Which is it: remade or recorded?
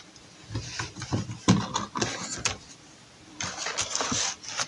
recorded